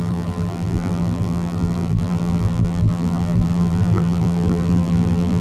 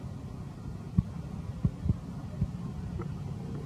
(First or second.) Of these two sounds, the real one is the second